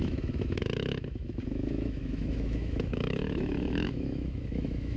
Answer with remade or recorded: remade